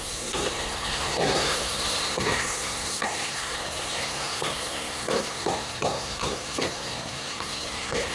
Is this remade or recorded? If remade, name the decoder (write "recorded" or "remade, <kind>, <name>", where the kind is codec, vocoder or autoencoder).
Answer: remade, codec, SNAC